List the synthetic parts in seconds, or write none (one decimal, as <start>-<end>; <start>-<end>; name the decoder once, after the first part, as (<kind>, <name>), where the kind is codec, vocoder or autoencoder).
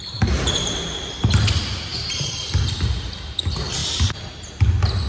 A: none